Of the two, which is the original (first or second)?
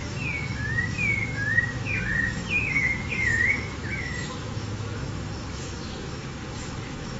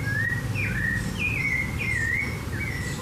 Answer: second